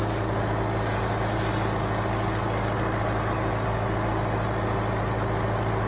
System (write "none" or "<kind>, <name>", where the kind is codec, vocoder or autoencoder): none